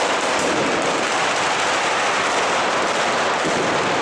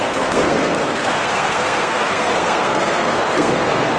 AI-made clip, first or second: second